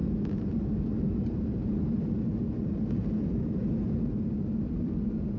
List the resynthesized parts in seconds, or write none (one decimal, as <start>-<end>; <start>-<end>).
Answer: 3.2-3.6; 4.5-5.4